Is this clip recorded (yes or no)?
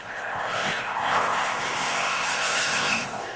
no